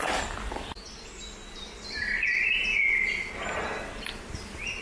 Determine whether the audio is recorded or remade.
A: recorded